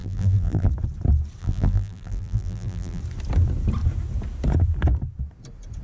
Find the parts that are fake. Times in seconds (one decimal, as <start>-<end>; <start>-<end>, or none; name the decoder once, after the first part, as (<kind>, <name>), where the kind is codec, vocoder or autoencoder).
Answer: 0.0-0.7 (vocoder, BigVGAN v2); 1.4-3.0